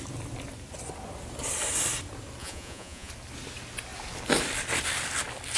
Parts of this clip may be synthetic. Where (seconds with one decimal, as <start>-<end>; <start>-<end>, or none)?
2.4-3.1